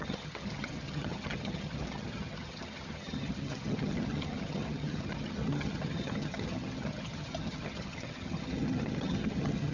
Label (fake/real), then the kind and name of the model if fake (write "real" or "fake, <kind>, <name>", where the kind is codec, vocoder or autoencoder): fake, vocoder, HiFi-GAN